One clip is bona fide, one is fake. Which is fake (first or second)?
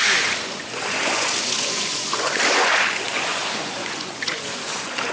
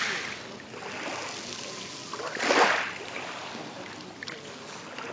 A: first